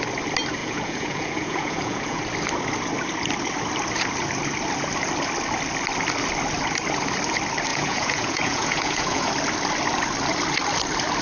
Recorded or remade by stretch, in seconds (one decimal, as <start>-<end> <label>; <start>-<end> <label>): 0.0-0.6 recorded; 0.6-2.2 remade; 2.2-7.7 recorded; 7.7-9.3 remade; 9.3-11.2 recorded